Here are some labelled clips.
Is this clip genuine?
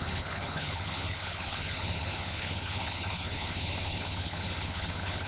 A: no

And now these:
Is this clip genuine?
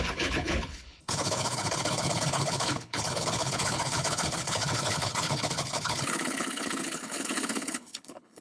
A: no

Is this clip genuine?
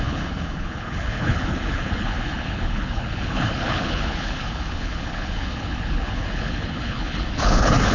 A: no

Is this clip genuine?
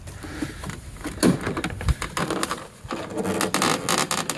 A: yes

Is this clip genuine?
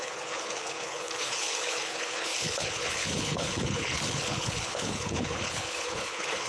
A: no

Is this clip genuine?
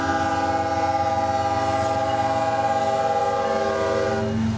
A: yes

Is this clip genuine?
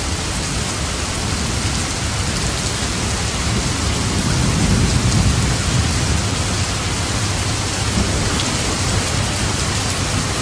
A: yes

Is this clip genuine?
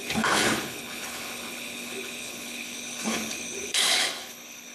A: no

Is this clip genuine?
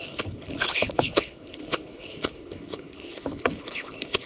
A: no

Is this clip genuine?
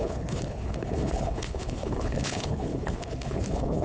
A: no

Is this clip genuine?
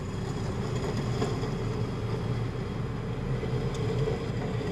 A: yes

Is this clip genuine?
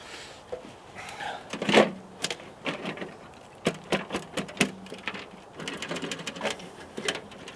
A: yes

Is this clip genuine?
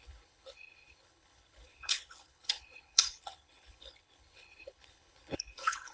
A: no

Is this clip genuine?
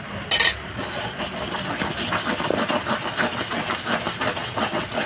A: yes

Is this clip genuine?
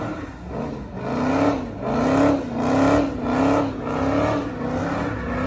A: yes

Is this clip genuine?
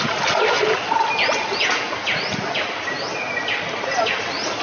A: yes